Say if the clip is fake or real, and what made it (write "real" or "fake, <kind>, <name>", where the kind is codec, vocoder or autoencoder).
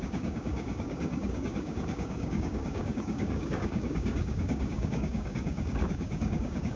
fake, codec, DAC